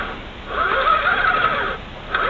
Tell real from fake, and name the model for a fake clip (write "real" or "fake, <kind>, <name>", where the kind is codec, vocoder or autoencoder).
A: real